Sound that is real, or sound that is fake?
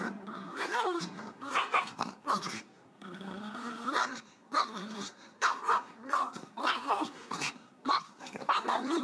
fake